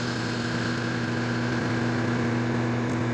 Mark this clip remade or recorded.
recorded